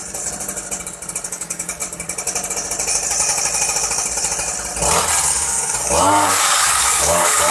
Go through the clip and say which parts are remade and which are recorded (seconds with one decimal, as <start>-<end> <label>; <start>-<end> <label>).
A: 0.0-1.3 recorded; 1.3-1.8 remade; 1.8-5.3 recorded; 5.3-7.5 remade